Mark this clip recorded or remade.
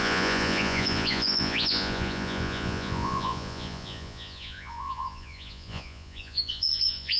remade